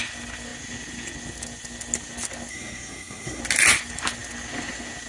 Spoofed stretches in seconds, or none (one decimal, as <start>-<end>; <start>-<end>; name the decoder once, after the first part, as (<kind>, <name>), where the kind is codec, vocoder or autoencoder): 2.5-3.4 (codec, SNAC)

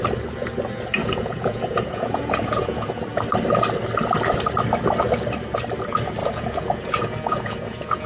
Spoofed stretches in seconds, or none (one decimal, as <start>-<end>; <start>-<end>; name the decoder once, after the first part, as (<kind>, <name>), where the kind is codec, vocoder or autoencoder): 1.0-3.0 (vocoder, Vocos); 6.2-8.1

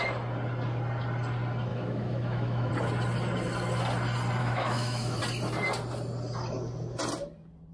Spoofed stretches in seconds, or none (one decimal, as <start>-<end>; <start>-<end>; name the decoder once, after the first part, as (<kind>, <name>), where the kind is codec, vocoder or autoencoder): 1.7-2.7 (autoencoder, DAC-VAE); 4.4-5.2

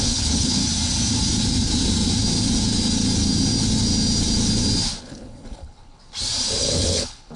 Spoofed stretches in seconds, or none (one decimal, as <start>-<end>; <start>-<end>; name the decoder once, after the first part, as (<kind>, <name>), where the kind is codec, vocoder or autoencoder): 0.0-0.6 (codec, HILCodec); 5.0-6.0; 6.6-7.4

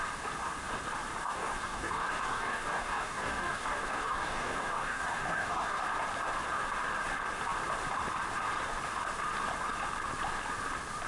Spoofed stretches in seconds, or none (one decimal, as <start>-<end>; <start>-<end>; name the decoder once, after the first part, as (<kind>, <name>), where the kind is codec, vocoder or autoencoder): 1.2-5.8 (codec, DAC)

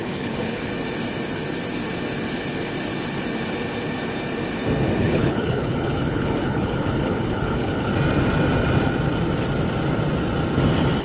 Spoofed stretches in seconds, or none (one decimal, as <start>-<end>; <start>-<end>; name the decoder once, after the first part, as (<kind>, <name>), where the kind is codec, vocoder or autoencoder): 0.0-0.7 (codec, HILCodec); 5.0-7.9

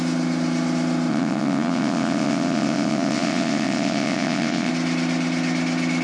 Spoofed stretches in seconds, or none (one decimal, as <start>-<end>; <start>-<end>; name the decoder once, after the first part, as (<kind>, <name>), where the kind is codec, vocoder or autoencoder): 1.1-4.7 (vocoder, WaveNeXt)

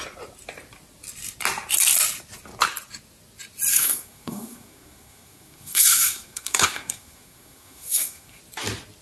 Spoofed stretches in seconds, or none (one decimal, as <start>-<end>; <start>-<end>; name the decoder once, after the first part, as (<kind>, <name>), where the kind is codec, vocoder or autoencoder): 3.7-8.4 (codec, SNAC)